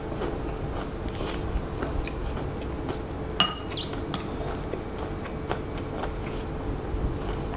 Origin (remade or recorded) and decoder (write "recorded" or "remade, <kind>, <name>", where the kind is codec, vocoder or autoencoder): recorded